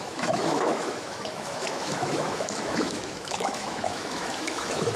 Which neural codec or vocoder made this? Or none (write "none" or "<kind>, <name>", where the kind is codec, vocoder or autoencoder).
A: autoencoder, DAC-VAE